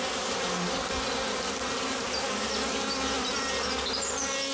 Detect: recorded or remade recorded